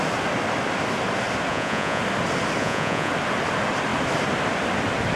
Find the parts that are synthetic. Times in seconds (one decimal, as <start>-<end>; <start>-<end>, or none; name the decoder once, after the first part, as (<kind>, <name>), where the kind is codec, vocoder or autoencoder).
1.5-2.0 (vocoder, Vocos); 2.6-3.1